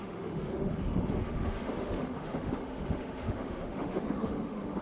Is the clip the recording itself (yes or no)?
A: no